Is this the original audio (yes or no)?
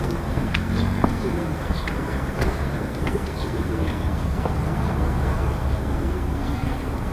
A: no